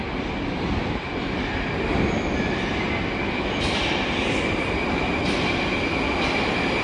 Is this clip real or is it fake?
real